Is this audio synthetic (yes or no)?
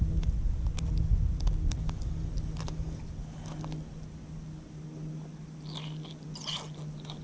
no